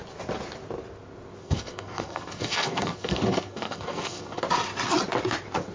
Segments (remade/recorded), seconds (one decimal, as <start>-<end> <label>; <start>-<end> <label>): 0.0-1.4 recorded; 1.4-4.4 remade; 4.4-5.7 recorded